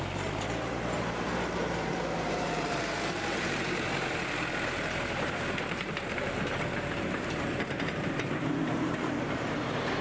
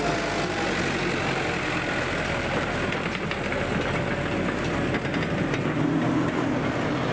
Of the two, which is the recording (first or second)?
second